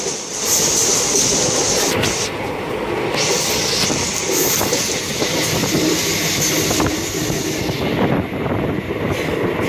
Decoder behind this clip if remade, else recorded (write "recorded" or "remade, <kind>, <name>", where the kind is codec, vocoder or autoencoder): recorded